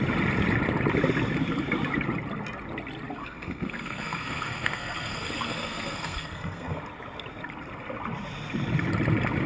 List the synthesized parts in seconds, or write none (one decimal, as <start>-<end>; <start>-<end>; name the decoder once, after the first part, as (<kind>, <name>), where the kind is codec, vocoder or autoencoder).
3.2-6.8 (codec, SNAC)